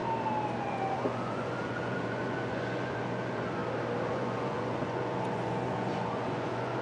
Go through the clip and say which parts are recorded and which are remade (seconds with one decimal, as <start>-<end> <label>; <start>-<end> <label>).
0.0-0.6 recorded; 0.6-3.6 remade; 3.6-4.1 recorded; 4.1-6.8 remade